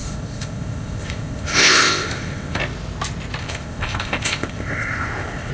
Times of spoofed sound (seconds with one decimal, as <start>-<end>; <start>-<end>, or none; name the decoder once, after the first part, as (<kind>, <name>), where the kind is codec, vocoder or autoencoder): 0.0-2.6 (codec, ZipCodec); 3.4-5.5